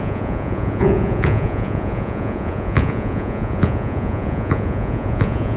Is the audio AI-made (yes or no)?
yes